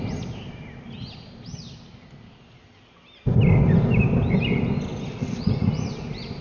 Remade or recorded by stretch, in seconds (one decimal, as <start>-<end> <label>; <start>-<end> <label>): 0.0-6.4 recorded